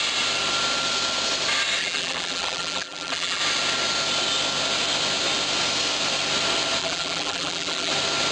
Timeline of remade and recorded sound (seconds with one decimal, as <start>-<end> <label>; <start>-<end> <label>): 0.0-1.8 recorded; 1.8-3.4 remade; 3.4-6.8 recorded; 6.8-7.9 remade; 7.9-8.3 recorded